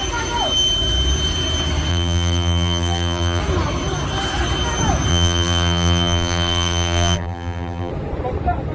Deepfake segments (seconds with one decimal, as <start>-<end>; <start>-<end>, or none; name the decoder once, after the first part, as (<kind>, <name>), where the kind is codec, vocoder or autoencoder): 1.9-3.4 (vocoder, BigVGAN v2); 5.1-7.9